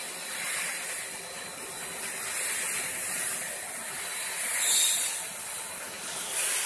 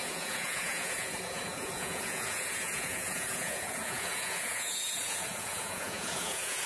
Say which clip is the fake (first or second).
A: second